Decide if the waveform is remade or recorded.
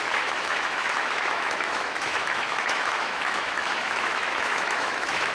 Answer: remade